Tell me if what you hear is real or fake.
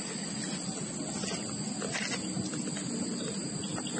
real